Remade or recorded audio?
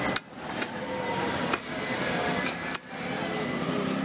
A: recorded